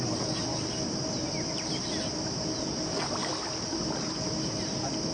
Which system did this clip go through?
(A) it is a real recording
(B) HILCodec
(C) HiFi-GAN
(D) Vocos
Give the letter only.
A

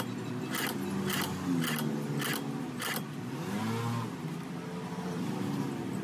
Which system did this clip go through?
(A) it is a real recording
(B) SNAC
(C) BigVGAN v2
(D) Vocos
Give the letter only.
A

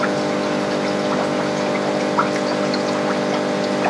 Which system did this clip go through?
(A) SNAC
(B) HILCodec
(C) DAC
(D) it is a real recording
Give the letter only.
D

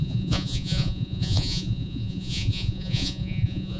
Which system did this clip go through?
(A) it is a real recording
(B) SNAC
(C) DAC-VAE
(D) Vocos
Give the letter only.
D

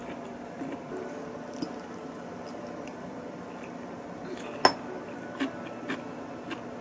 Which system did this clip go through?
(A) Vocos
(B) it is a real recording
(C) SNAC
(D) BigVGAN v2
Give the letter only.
B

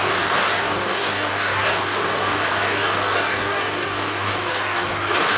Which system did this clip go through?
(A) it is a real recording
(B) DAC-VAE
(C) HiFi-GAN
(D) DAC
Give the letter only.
D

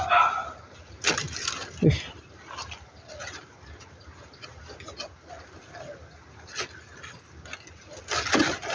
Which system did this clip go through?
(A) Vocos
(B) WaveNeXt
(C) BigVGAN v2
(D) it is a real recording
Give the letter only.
D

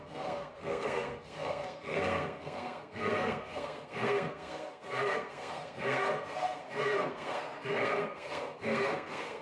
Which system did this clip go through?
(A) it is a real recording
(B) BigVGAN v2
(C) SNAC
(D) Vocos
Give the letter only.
C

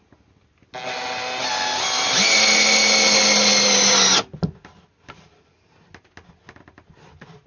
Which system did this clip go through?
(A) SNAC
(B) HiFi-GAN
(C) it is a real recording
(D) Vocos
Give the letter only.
C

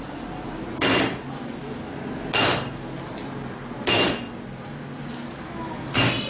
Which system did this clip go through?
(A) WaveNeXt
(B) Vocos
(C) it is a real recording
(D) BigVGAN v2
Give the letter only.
C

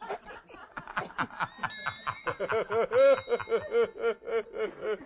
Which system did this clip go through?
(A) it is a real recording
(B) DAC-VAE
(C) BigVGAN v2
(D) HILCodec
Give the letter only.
A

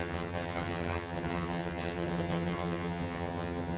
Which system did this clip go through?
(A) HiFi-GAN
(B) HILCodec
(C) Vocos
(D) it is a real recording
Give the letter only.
A